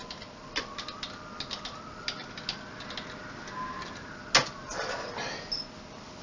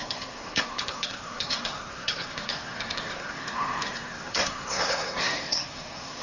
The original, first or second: first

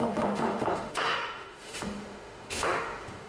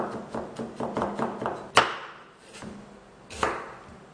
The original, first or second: second